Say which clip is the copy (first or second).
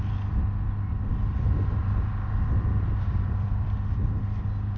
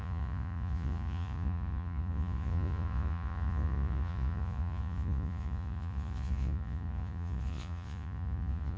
second